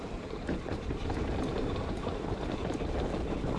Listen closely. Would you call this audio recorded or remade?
remade